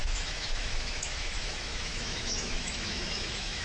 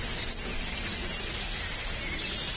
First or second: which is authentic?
second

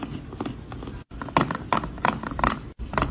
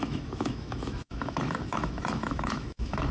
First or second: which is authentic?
first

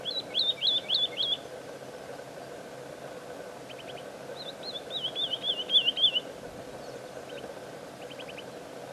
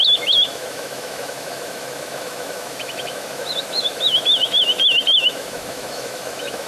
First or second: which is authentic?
first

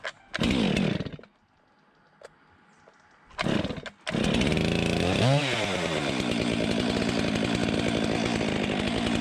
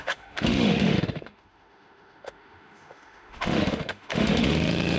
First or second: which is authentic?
first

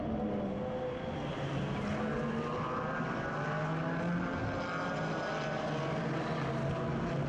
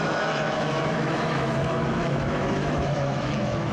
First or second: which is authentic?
first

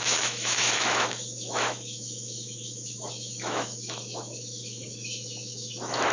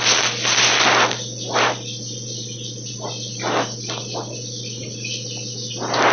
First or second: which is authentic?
second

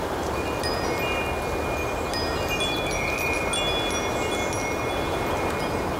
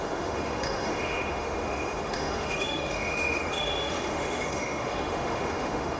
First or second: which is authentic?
first